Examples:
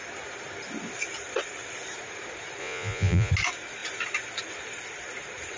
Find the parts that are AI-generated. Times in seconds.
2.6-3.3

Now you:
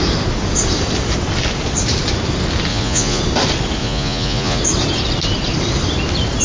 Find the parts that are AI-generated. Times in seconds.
2.7-3.2; 3.8-4.6

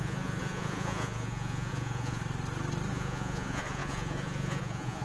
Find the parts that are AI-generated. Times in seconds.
0.0-2.2; 2.9-5.0

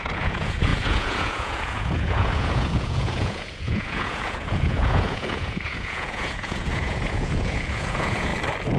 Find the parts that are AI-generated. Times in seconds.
0.0-8.3

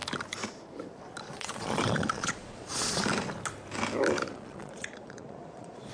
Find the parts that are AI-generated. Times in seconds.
1.3-3.0; 4.3-5.9

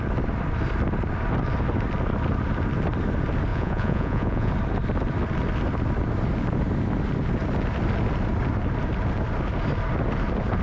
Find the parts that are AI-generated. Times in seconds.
3.5-4.5